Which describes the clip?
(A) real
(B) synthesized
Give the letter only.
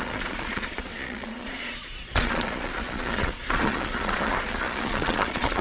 B